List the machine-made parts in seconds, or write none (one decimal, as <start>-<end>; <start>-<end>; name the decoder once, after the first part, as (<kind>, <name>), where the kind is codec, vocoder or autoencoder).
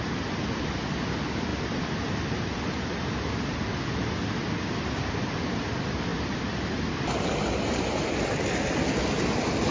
none